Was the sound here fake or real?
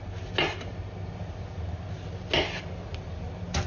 real